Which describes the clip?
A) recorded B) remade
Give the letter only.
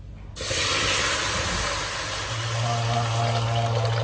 A